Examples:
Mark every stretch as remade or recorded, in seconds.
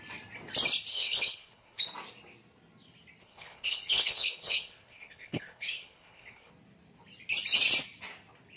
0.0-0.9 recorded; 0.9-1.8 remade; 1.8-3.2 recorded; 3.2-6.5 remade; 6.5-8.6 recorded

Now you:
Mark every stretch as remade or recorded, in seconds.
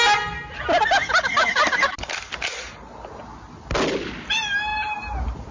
0.0-5.5 recorded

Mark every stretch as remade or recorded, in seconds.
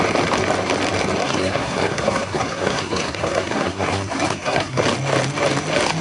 0.0-1.2 recorded; 1.2-4.8 remade; 4.8-6.0 recorded